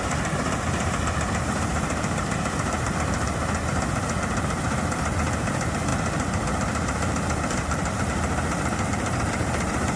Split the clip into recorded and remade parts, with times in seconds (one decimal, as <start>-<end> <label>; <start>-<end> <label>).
0.0-10.0 remade